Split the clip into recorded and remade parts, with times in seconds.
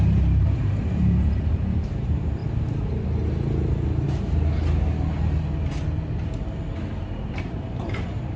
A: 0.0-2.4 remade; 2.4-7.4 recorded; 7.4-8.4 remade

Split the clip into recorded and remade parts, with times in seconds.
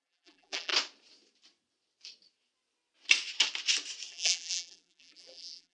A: 0.0-0.7 remade; 0.7-4.1 recorded; 4.1-5.7 remade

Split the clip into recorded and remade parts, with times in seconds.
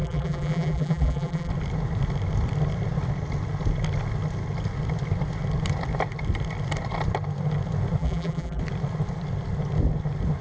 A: 0.0-1.5 remade; 1.5-8.0 recorded; 8.0-8.6 remade; 8.6-10.4 recorded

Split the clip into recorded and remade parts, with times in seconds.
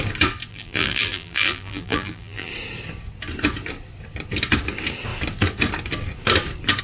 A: 0.0-0.5 recorded; 0.5-2.5 remade; 2.5-6.8 recorded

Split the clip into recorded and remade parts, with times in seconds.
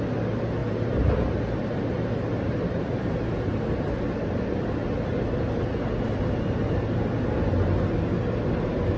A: 0.0-0.6 recorded; 0.6-3.9 remade; 3.9-9.0 recorded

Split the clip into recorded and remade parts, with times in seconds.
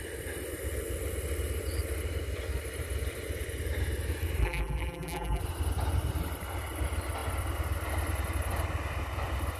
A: 0.0-4.4 recorded; 4.4-5.4 remade; 5.4-9.6 recorded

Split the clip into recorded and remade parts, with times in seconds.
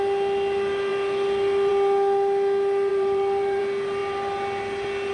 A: 0.0-2.9 recorded; 2.9-3.6 remade; 3.6-5.1 recorded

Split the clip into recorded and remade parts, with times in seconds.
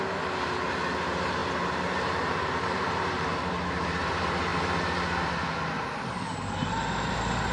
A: 0.0-7.5 remade